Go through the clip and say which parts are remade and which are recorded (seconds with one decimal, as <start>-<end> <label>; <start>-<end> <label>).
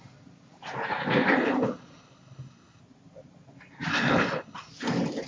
0.0-1.4 recorded; 1.4-2.8 remade; 2.8-3.9 recorded; 3.9-4.7 remade; 4.7-5.3 recorded